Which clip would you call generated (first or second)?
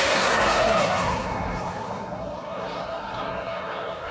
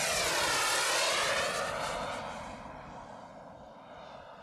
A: first